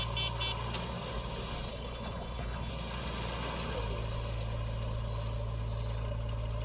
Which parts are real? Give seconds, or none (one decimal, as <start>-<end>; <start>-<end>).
0.0-1.7; 2.7-6.6